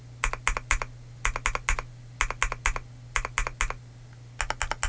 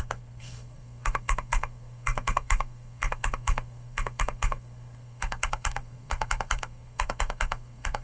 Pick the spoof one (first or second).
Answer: second